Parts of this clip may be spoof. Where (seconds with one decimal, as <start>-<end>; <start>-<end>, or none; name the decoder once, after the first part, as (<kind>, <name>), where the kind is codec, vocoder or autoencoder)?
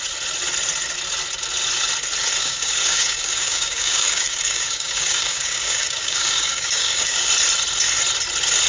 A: 2.4-7.3 (codec, DAC)